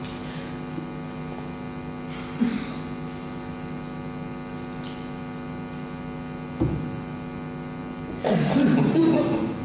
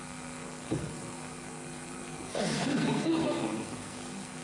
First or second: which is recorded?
first